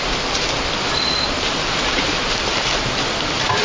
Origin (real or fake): fake